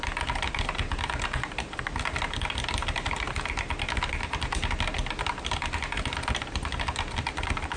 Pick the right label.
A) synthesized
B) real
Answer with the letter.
B